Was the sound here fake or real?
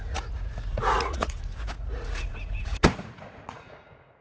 fake